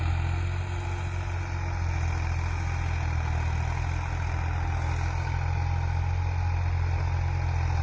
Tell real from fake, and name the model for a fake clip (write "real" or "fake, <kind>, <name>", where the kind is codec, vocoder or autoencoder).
real